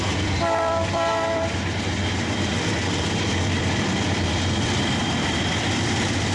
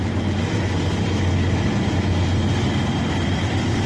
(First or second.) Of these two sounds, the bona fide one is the second